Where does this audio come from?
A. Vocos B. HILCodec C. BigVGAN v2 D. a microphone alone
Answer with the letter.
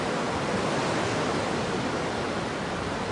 D